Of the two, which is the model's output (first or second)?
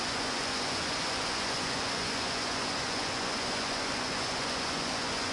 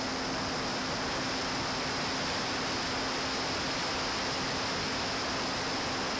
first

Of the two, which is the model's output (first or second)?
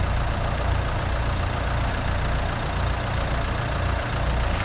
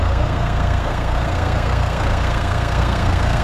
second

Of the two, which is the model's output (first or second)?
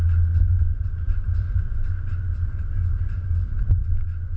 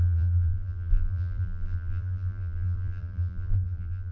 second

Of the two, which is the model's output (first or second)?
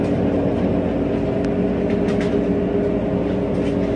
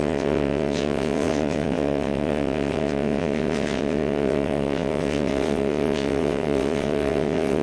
second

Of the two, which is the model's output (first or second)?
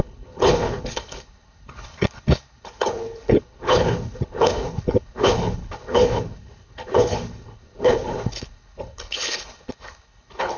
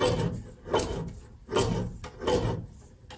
first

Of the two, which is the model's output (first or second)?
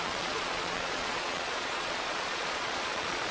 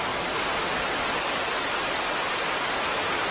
first